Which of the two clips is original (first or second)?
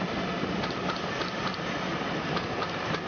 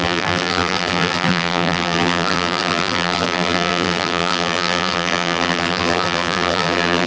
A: first